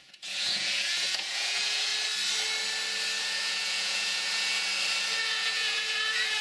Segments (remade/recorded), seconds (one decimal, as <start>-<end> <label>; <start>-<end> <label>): 0.0-1.9 remade; 1.9-3.2 recorded; 3.2-4.5 remade; 4.5-5.2 recorded; 5.2-6.4 remade